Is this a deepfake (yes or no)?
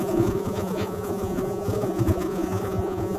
yes